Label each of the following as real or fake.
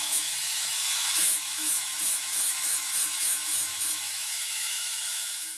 fake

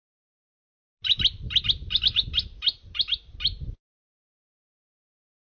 real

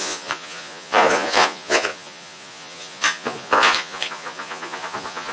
fake